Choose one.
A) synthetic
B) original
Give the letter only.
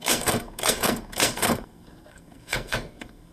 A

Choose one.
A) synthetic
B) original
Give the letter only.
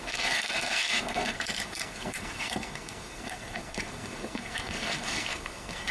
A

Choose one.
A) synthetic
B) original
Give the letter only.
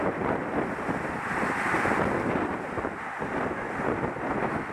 B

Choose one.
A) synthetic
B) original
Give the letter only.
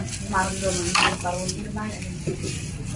B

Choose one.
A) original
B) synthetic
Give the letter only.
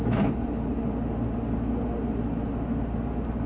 A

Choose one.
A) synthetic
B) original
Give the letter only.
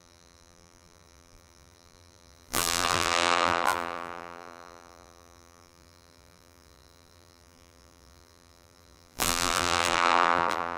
A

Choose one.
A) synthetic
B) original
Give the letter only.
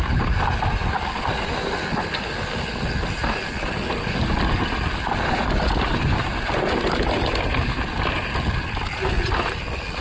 B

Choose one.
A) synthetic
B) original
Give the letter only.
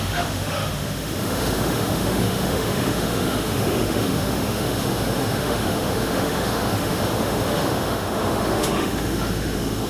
A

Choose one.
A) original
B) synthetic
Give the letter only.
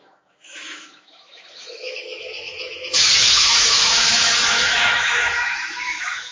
B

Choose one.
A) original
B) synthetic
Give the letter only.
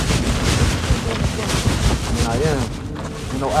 A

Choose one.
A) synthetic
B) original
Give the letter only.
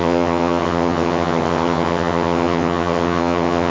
A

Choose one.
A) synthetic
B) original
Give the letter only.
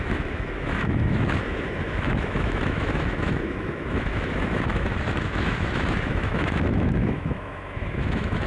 A